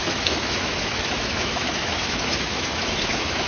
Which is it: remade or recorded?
remade